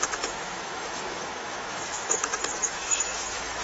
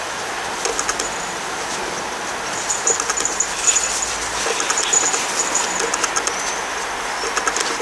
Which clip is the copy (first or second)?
first